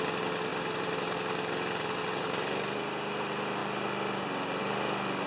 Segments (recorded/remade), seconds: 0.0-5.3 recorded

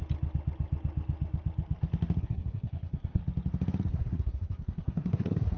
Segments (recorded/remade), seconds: 0.0-2.2 recorded; 2.2-3.2 remade; 3.2-3.9 recorded; 3.9-5.6 remade

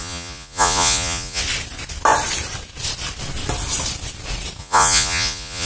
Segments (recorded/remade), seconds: 0.0-1.4 remade; 1.4-4.6 recorded; 4.6-5.7 remade

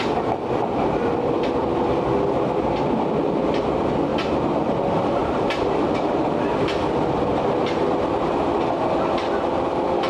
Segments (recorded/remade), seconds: 0.0-4.1 recorded; 4.1-4.8 remade; 4.8-5.2 recorded; 5.2-6.2 remade; 6.2-10.1 recorded

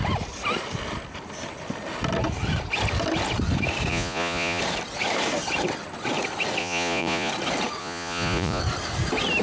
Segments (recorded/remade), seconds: 0.0-3.9 recorded; 3.9-4.6 remade; 4.6-6.6 recorded; 6.6-7.3 remade; 7.3-7.8 recorded; 7.8-8.6 remade; 8.6-9.4 recorded

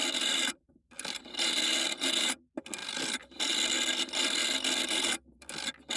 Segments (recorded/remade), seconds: 0.0-1.2 remade; 1.2-2.8 recorded; 2.8-3.4 remade; 3.4-4.4 recorded; 4.4-5.5 remade; 5.5-6.0 recorded